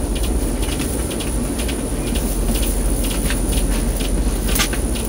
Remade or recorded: recorded